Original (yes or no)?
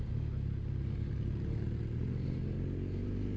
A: yes